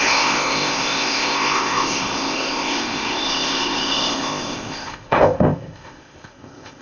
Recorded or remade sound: remade